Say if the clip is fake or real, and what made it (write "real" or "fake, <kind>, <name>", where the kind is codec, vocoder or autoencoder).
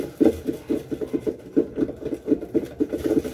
real